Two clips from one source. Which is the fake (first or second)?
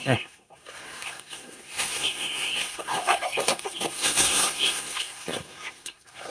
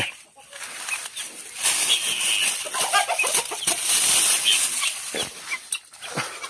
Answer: first